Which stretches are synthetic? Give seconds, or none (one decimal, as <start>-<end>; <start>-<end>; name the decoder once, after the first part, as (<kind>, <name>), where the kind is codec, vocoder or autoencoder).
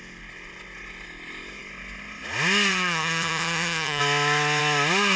2.7-4.0 (vocoder, HiFi-GAN)